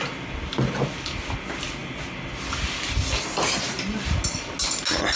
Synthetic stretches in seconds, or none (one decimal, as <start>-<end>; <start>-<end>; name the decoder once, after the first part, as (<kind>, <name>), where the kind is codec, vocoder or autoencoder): none